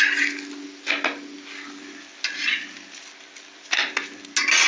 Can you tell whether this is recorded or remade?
recorded